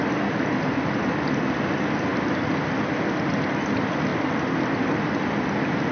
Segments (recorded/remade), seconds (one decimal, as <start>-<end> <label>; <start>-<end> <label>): 0.0-5.9 recorded